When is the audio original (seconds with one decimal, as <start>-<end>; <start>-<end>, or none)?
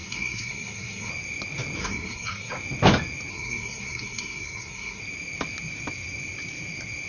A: 1.1-1.8; 2.5-3.3; 5.0-7.1